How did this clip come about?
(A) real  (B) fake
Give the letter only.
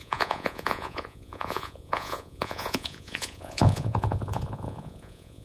B